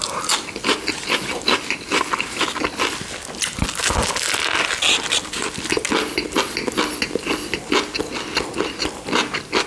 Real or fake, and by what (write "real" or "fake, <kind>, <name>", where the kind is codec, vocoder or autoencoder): real